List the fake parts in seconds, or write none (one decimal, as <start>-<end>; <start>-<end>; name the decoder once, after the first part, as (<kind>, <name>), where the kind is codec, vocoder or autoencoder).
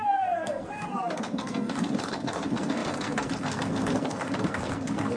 0.0-5.2 (codec, SNAC)